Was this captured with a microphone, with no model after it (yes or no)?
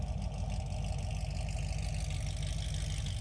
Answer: yes